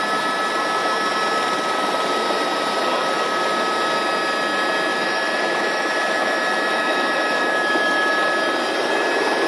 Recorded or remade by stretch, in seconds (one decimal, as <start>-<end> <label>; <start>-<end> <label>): 0.0-4.9 recorded; 4.9-7.4 remade; 7.4-9.5 recorded